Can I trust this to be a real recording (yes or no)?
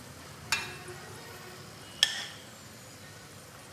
yes